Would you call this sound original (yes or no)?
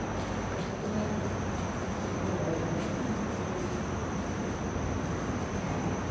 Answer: yes